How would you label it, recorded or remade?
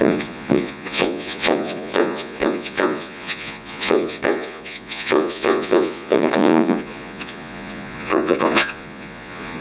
remade